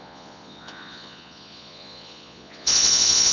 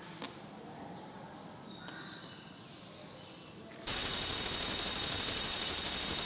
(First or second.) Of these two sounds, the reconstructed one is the first